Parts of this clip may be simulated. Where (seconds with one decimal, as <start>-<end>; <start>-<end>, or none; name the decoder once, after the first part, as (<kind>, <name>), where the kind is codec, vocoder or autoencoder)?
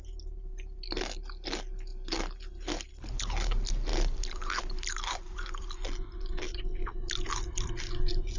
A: 3.9-7.7 (vocoder, BigVGAN v2)